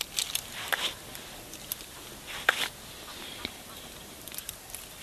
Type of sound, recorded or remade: recorded